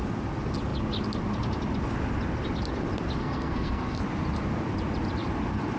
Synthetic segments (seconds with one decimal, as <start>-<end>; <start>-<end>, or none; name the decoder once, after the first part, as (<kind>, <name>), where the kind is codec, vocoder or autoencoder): 3.2-4.0 (codec, SNAC)

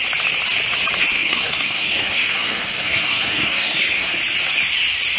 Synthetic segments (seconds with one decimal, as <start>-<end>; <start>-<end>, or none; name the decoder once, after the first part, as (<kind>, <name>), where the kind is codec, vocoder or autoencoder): 1.0-4.1 (codec, SNAC)

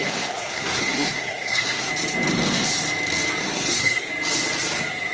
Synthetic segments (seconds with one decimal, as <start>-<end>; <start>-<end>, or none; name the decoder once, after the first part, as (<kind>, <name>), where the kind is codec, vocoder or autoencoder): 0.0-1.9 (codec, SNAC); 3.4-4.1

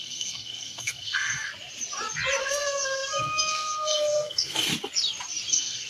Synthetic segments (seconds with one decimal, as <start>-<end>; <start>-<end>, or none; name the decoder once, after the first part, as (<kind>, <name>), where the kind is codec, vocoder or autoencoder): 0.0-1.5 (codec, SNAC); 2.4-4.7; 5.5-5.9

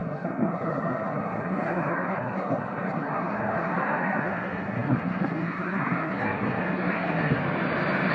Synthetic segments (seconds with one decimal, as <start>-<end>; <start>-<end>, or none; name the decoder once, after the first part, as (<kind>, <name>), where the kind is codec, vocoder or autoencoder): 0.0-7.4 (codec, SNAC)

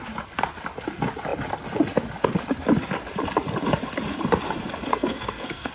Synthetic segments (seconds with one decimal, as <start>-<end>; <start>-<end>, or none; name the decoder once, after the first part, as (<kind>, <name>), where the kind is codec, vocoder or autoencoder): 4.9-5.7 (codec, SNAC)